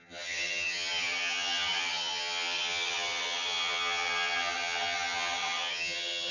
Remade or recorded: remade